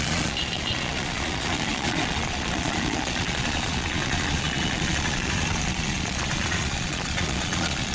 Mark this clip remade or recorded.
remade